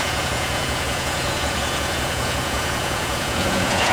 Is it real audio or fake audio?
fake